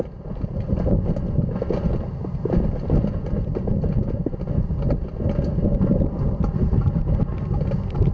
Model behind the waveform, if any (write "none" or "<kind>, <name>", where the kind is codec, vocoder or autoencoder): none